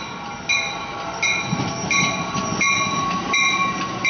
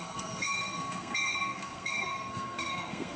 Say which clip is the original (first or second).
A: first